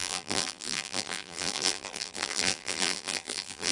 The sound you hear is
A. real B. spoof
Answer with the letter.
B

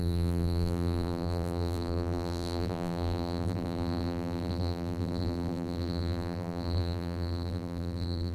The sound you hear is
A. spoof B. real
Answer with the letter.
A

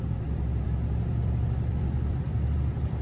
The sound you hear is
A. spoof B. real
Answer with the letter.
A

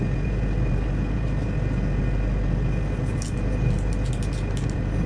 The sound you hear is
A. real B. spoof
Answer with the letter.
A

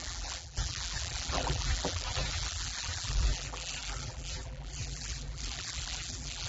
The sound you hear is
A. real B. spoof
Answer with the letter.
B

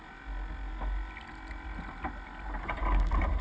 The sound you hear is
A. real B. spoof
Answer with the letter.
A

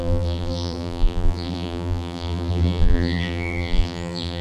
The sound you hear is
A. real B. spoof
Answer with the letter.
B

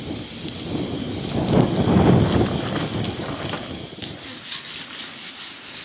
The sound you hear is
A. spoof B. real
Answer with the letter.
B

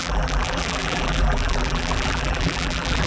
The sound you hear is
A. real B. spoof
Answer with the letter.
B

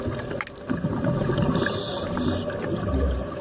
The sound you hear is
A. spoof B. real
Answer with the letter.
B